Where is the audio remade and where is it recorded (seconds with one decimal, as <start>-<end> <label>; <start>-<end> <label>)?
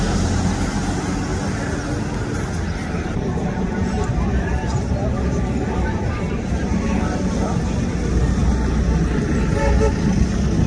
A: 0.0-1.3 recorded; 1.3-1.8 remade; 1.8-2.8 recorded; 2.8-6.9 remade; 6.9-10.7 recorded